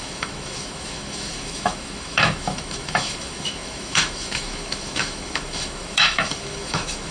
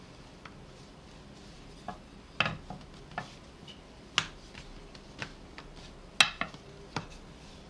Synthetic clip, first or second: first